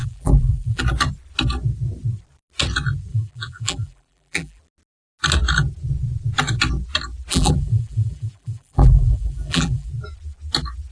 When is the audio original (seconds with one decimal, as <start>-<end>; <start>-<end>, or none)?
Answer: 0.8-3.1; 4.6-7.3; 9.9-10.9